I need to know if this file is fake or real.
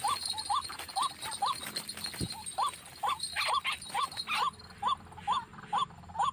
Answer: real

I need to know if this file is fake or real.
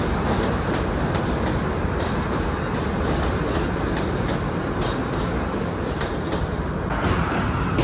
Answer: real